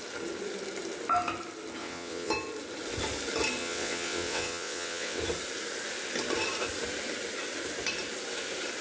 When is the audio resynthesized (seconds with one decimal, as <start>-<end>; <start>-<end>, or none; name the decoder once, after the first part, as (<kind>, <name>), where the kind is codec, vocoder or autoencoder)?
1.8-2.3 (vocoder, WaveNeXt); 3.6-5.2

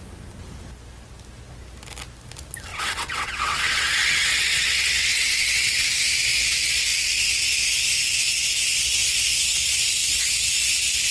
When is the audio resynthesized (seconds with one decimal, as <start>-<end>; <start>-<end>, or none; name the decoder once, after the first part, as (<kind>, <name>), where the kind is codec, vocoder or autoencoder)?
2.7-5.7 (vocoder, WaveNeXt)